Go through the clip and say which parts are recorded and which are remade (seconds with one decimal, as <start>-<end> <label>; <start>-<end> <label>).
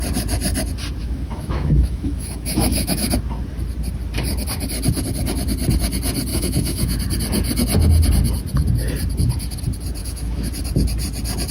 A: 0.0-1.0 recorded; 1.0-3.1 remade; 3.1-6.3 recorded; 6.3-7.0 remade; 7.0-10.0 recorded; 10.0-10.5 remade; 10.5-11.5 recorded